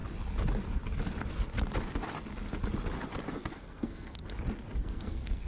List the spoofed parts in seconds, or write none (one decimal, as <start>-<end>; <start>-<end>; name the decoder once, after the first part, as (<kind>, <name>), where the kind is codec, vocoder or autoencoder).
3.3-4.2 (codec, SNAC); 4.8-5.5